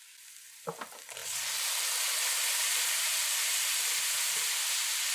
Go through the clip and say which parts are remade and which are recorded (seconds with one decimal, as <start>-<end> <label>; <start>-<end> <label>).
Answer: 0.0-5.1 recorded